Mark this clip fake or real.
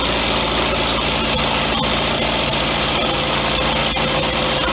real